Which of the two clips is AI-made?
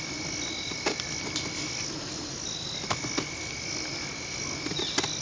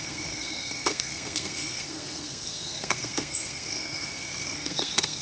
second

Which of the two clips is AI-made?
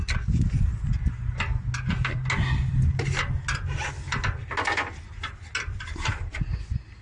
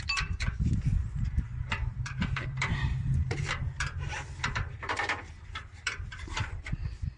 second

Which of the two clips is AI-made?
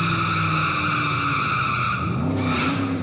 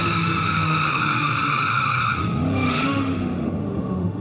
second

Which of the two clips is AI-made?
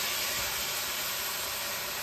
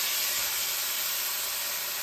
first